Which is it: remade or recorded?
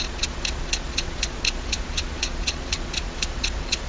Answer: remade